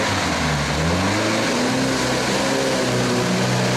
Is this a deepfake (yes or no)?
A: no